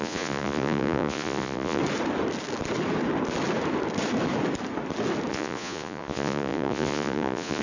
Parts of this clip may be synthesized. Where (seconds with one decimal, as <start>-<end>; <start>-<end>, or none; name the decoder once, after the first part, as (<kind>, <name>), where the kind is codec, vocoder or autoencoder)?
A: 0.0-1.8 (vocoder, Vocos); 5.3-7.6